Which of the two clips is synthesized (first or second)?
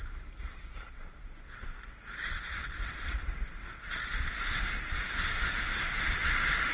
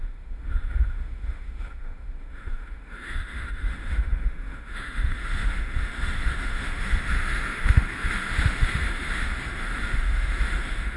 second